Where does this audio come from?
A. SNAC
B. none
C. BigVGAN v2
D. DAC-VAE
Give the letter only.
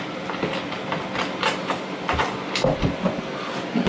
B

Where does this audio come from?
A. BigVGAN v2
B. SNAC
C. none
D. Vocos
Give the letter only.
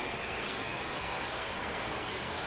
B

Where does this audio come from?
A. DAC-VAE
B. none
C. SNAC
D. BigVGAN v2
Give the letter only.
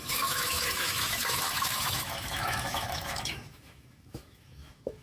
A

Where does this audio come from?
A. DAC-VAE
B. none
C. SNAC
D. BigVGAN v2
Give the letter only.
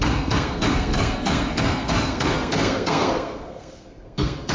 C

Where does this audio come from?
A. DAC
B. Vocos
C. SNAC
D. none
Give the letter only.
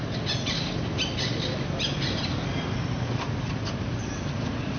D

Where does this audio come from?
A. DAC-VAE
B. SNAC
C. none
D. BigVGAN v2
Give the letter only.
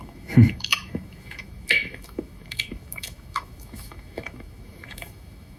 A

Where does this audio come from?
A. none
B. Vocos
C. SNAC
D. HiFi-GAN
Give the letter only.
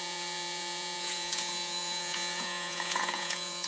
B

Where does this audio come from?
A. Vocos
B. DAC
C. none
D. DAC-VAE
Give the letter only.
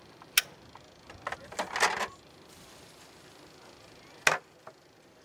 C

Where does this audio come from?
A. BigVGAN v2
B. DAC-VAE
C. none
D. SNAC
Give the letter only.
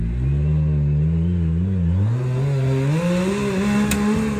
C